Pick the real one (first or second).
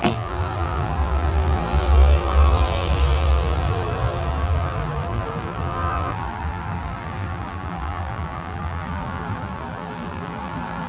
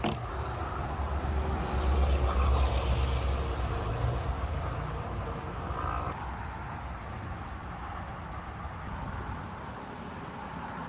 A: second